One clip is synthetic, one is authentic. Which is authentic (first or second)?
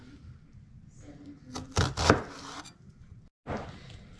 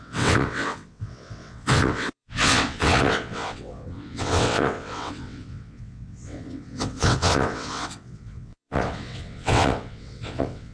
first